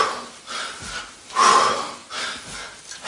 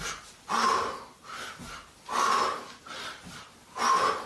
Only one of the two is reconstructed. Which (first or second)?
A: first